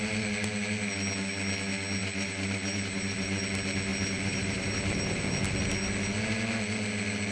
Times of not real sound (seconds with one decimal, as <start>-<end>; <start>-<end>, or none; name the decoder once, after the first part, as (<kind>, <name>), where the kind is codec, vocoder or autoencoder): 2.0-3.4 (vocoder, BigVGAN v2); 3.9-5.2